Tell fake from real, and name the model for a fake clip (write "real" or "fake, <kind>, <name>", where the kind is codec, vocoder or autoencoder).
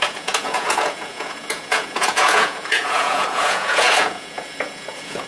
fake, vocoder, Vocos